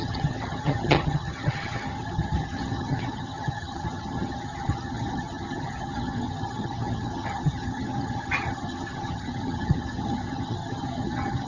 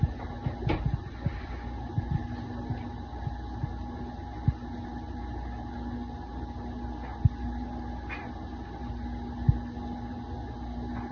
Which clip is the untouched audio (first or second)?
second